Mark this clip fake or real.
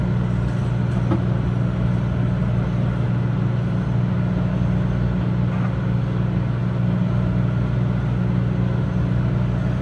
real